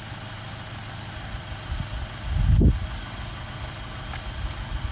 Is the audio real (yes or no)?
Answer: yes